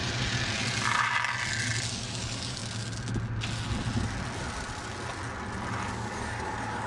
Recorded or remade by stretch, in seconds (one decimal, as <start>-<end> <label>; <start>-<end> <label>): 0.0-1.9 recorded; 1.9-2.6 remade; 2.6-5.8 recorded; 5.8-6.9 remade

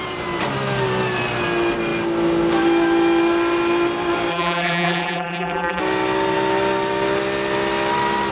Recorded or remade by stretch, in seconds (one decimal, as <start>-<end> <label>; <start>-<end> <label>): 0.0-4.3 recorded; 4.3-5.8 remade; 5.8-8.3 recorded

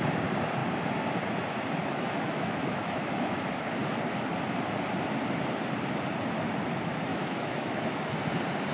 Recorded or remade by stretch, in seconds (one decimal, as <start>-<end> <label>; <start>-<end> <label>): 0.0-1.8 recorded; 1.8-3.4 remade; 3.4-7.1 recorded; 7.1-8.1 remade; 8.1-8.7 recorded

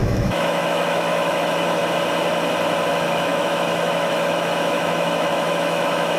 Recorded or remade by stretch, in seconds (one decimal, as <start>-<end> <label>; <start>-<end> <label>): 0.0-1.8 remade; 1.8-2.9 recorded; 2.9-6.2 remade

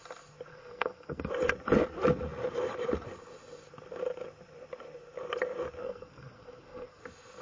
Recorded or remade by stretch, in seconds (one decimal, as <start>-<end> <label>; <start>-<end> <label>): 0.0-0.5 recorded; 0.5-1.3 remade; 1.3-5.8 recorded; 5.8-7.0 remade; 7.0-7.4 recorded

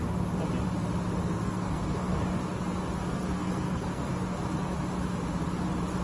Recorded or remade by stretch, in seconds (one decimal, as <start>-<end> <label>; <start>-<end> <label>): 0.0-1.2 recorded; 1.2-2.2 remade; 2.2-3.1 recorded; 3.1-4.1 remade; 4.1-6.0 recorded